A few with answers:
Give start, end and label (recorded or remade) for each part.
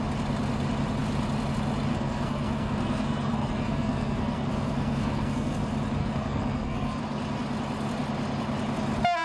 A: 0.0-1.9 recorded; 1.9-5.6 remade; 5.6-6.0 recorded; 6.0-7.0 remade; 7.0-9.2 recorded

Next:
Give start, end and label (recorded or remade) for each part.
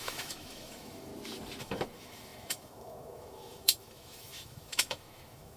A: 0.0-1.1 remade; 1.1-1.6 recorded; 1.6-5.6 remade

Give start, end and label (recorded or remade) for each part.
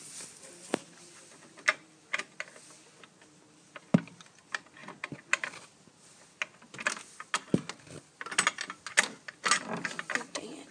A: 0.0-10.7 recorded